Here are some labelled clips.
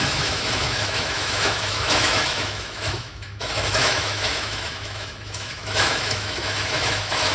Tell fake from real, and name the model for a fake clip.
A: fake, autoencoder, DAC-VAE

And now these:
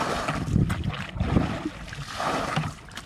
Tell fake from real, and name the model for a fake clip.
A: real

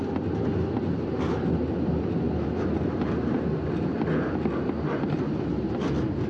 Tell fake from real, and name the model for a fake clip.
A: real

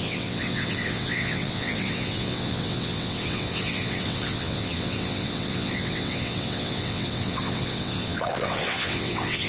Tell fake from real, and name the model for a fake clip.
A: fake, vocoder, WaveNeXt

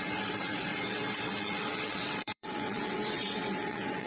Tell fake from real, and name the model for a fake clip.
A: fake, vocoder, WaveNeXt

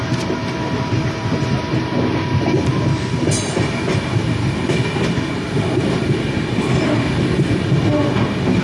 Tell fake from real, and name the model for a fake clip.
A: real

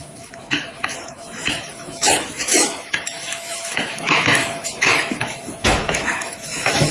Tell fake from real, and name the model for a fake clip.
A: fake, autoencoder, DAC-VAE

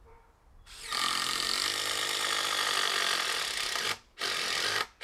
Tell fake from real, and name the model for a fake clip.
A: real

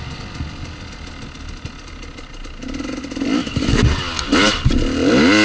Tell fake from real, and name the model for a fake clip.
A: real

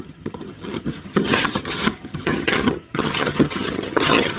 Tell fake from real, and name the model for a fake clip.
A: fake, vocoder, HiFi-GAN